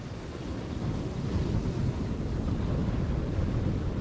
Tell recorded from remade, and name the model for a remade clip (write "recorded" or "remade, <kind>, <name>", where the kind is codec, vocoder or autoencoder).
recorded